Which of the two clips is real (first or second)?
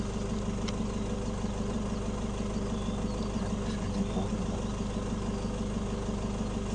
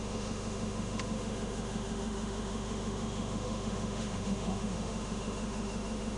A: first